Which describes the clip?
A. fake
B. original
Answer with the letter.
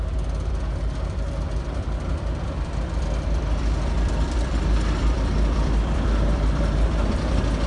A